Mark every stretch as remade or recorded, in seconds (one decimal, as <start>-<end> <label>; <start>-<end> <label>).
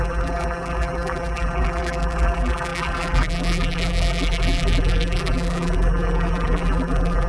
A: 0.0-7.3 remade